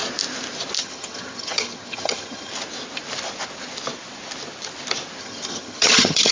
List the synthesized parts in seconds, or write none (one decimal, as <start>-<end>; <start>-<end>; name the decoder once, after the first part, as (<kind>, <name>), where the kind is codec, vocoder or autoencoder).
0.8-2.5 (vocoder, HiFi-GAN); 5.2-6.3